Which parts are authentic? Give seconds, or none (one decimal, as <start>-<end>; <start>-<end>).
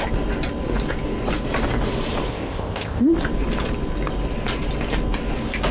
0.0-2.3; 3.1-5.7